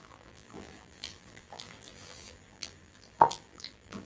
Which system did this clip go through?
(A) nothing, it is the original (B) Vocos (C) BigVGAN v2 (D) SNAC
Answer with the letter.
C